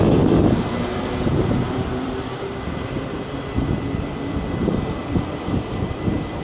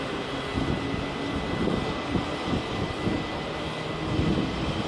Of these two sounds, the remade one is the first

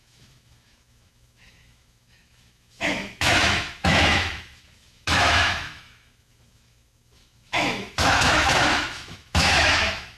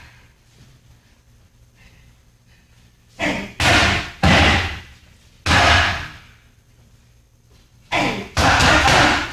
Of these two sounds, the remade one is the first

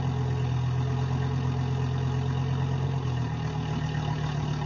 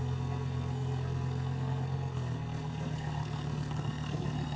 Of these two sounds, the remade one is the second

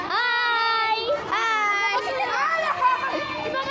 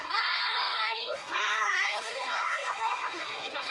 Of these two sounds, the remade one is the second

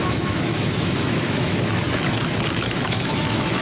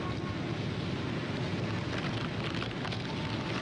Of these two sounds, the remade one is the first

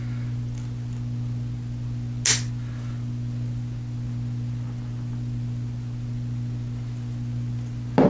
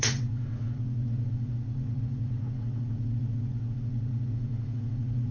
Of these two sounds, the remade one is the second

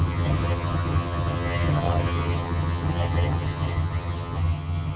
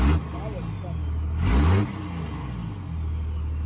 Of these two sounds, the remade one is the first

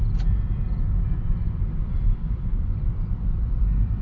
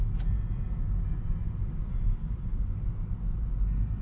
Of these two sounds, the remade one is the first